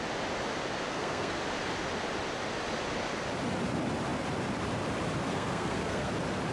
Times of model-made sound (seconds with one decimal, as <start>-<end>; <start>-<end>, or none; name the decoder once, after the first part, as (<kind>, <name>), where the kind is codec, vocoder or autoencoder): 0.9-1.4 (codec, SNAC); 5.3-6.1